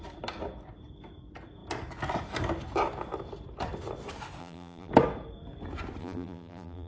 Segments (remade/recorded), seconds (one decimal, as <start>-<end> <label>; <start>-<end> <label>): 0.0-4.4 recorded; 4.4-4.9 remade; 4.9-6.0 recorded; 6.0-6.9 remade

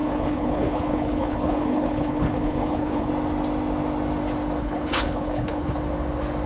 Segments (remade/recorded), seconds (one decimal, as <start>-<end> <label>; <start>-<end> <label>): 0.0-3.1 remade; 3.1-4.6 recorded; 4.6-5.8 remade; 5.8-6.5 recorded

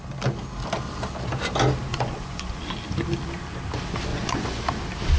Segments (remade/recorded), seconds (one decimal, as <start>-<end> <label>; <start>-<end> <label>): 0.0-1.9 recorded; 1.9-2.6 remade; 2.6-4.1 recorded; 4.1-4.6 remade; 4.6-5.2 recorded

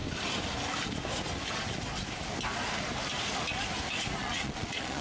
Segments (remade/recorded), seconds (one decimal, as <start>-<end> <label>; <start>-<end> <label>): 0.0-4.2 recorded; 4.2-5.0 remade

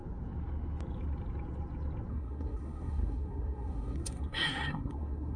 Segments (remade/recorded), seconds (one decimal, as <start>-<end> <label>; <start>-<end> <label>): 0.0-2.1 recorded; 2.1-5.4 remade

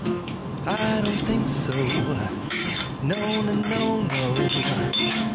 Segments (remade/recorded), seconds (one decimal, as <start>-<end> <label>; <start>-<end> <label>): 0.0-0.4 remade; 0.4-2.0 recorded; 2.0-2.6 remade; 2.6-3.8 recorded; 3.8-5.3 remade

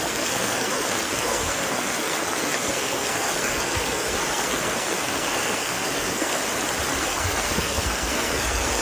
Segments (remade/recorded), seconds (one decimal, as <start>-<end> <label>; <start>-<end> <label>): 0.0-6.4 remade; 6.4-7.0 recorded; 7.0-8.8 remade